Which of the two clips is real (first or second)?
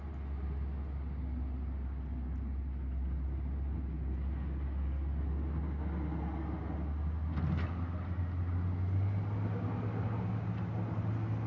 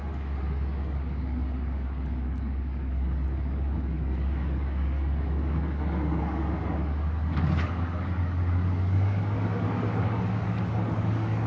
first